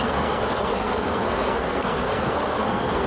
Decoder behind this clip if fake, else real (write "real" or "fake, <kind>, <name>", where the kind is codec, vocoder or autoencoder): fake, codec, SNAC